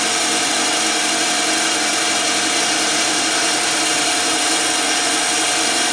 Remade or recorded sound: recorded